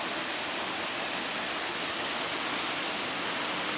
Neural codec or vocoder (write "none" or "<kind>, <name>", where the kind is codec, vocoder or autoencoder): none